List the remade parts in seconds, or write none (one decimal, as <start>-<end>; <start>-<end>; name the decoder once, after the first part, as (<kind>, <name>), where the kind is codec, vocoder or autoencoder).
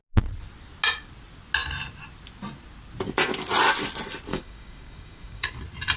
4.3-5.5 (codec, DAC)